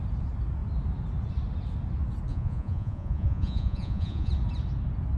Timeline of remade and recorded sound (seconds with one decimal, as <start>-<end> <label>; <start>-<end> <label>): 0.0-2.3 recorded; 2.3-4.3 remade; 4.3-5.2 recorded